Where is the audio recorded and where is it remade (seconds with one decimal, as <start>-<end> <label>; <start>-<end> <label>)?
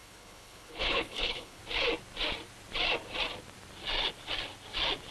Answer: 0.0-1.6 remade; 1.6-5.1 recorded